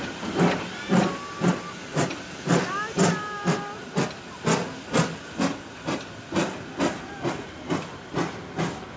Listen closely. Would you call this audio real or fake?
real